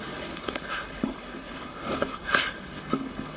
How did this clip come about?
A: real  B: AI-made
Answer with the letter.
B